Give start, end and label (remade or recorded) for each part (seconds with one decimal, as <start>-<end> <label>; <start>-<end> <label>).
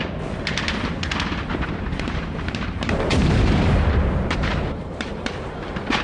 0.0-1.5 recorded; 1.5-5.1 remade; 5.1-6.0 recorded